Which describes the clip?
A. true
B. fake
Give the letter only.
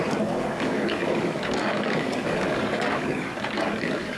B